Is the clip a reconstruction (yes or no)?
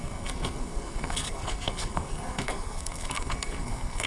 yes